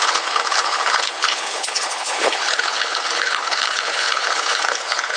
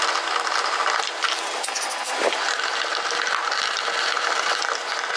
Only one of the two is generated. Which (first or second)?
first